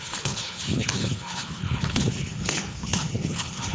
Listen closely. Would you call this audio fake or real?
fake